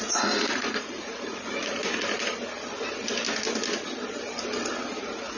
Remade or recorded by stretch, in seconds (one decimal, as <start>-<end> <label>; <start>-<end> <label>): 0.0-1.8 remade; 1.8-5.0 recorded; 5.0-5.4 remade

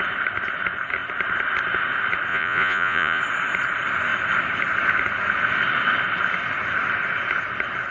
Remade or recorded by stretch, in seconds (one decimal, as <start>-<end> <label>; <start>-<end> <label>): 0.0-2.3 recorded; 2.3-3.2 remade; 3.2-7.9 recorded

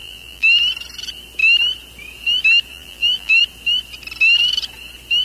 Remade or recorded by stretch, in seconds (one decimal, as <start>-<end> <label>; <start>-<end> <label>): 0.0-0.6 remade; 0.6-2.7 recorded; 2.7-3.4 remade; 3.4-5.2 recorded

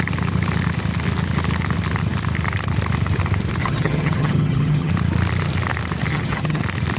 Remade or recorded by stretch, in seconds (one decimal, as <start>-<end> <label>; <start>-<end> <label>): 0.0-3.6 recorded; 3.6-4.9 remade; 4.9-6.1 recorded; 6.1-6.6 remade; 6.6-7.0 recorded

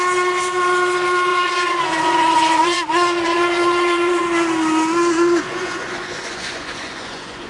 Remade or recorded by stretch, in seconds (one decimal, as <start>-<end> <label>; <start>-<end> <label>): 0.0-1.3 recorded; 1.3-4.2 remade; 4.2-5.5 recorded; 5.5-7.5 remade

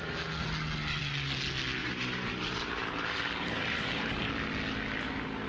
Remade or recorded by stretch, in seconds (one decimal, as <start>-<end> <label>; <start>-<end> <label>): 0.0-1.8 recorded; 1.8-4.3 remade; 4.3-5.5 recorded

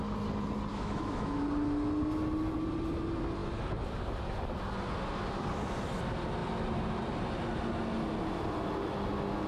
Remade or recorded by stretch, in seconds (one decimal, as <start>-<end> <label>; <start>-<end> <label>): 0.0-0.7 recorded; 0.7-1.4 remade; 1.4-9.5 recorded